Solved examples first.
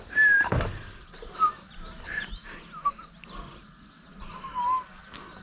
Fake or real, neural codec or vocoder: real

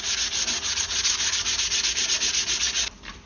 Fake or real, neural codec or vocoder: real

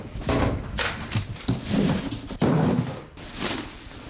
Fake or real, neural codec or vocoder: real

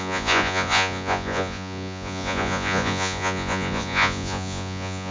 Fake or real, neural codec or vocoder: fake, vocoder, Vocos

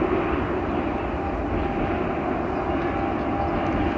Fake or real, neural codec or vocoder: real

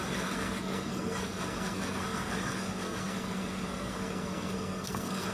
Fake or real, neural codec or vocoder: fake, codec, SNAC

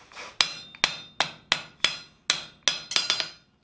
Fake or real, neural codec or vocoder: real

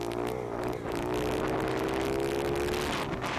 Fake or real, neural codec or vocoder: real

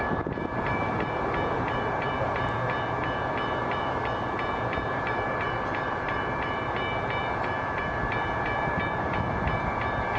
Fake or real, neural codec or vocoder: fake, vocoder, BigVGAN v2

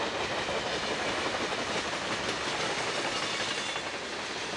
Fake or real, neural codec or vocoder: real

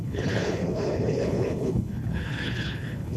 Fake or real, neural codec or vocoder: fake, codec, HILCodec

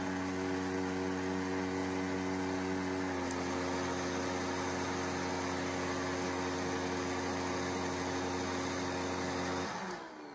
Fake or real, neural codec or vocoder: real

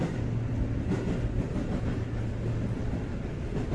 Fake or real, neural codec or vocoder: real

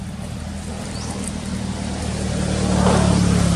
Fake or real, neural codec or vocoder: real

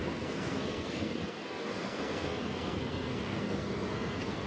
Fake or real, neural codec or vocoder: fake, codec, SNAC